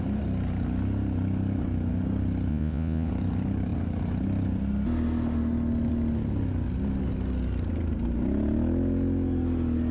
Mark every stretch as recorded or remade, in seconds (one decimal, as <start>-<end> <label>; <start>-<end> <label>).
0.0-2.5 recorded; 2.5-3.1 remade; 3.1-9.9 recorded